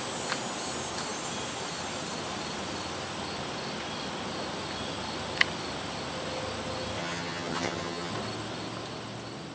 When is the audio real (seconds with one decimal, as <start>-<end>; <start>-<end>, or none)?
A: 0.0-7.0; 8.1-9.5